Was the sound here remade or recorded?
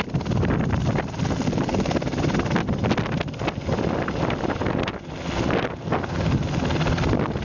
recorded